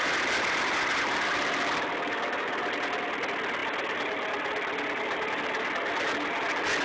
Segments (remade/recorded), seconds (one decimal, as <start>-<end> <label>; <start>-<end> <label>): 0.0-6.8 recorded